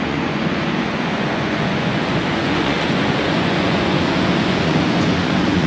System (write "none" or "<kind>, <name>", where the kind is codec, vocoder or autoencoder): vocoder, Vocos